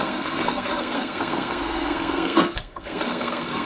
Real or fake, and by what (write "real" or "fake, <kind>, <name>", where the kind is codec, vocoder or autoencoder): fake, codec, SNAC